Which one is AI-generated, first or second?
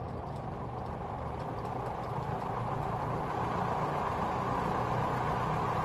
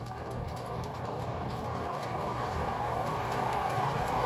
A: second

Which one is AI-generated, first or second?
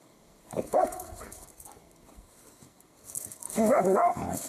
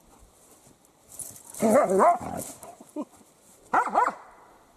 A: first